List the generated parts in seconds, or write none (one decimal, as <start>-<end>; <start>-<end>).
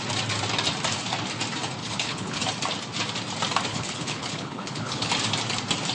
1.8-2.4; 3.7-5.1